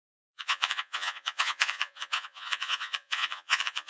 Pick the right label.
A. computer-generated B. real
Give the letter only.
A